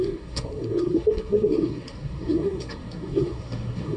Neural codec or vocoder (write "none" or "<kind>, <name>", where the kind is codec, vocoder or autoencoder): codec, SNAC